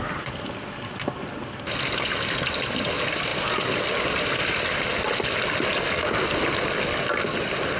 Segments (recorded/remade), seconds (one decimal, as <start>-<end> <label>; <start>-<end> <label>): 0.0-7.8 recorded